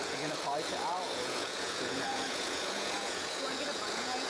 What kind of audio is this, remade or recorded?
remade